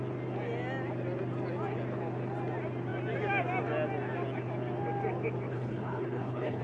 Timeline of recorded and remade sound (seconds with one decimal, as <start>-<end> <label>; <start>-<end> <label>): 0.0-5.5 recorded; 5.5-6.6 remade